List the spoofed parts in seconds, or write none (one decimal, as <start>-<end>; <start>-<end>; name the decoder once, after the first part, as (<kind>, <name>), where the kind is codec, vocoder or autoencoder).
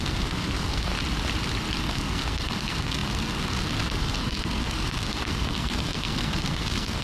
0.0-0.9 (codec, SNAC); 1.8-7.0